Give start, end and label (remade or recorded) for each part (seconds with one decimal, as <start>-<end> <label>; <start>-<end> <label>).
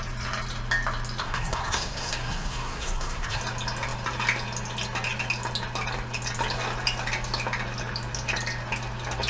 0.0-1.2 recorded; 1.2-3.4 remade; 3.4-9.3 recorded